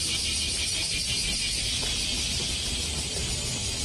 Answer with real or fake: real